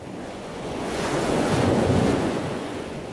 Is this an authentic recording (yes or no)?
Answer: no